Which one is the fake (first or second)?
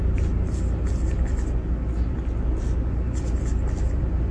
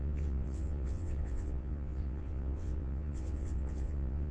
second